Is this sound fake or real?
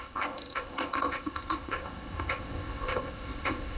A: fake